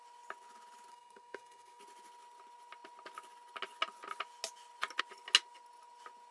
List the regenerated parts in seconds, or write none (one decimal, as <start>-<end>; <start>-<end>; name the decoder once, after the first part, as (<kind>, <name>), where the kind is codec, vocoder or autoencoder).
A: 0.9-1.8 (codec, SNAC)